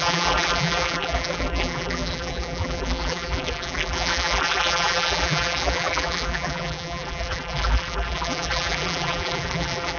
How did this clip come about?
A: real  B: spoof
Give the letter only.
B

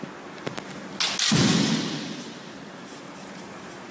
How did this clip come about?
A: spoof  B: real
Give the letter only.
B